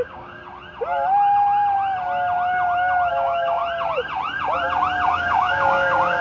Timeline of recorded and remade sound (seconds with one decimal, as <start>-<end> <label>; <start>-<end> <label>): 0.0-0.4 remade; 0.4-3.1 recorded; 3.1-3.6 remade; 3.6-5.1 recorded; 5.1-6.2 remade

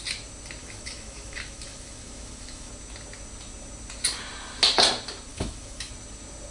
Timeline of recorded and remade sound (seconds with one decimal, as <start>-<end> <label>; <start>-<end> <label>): 0.0-0.6 recorded; 0.6-2.7 remade; 2.7-5.3 recorded; 5.3-5.9 remade; 5.9-6.5 recorded

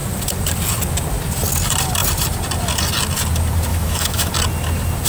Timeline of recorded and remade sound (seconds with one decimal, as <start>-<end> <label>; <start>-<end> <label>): 0.0-3.7 recorded; 3.7-4.3 remade; 4.3-5.1 recorded

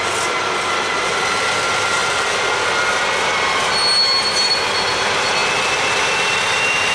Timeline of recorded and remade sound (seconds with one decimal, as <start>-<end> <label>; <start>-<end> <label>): 0.0-6.9 recorded

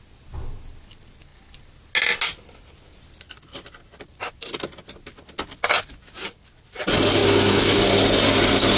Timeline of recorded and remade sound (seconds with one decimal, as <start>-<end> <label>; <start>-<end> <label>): 0.0-8.8 recorded

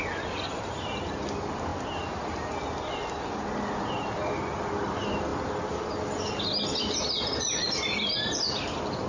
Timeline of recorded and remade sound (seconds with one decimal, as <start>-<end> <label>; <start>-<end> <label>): 0.0-9.1 recorded

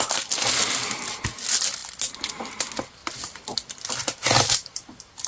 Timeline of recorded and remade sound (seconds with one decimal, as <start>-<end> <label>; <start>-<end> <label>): 0.0-3.0 recorded; 3.0-5.3 remade

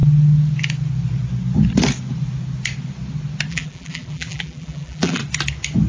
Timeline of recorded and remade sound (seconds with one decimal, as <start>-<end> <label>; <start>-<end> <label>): 0.0-3.5 recorded; 3.5-5.2 remade; 5.2-5.9 recorded